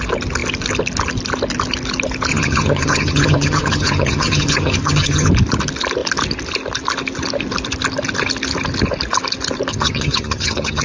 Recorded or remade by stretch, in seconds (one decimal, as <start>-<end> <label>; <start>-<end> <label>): 0.0-2.3 recorded; 2.3-5.3 remade; 5.3-9.7 recorded; 9.7-10.8 remade